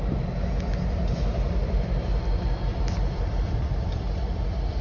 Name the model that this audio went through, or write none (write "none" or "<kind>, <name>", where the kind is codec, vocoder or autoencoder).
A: vocoder, BigVGAN v2